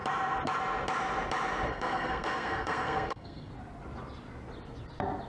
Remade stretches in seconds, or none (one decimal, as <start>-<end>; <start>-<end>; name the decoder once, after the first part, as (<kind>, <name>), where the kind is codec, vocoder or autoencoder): 1.7-3.5 (codec, SNAC)